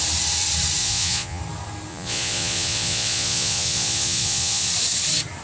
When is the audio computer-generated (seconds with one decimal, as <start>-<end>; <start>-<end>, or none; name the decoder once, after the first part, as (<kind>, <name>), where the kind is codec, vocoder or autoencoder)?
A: 0.8-1.4 (vocoder, Vocos); 1.9-4.7